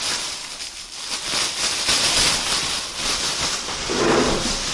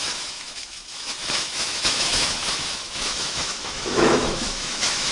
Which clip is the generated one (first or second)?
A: second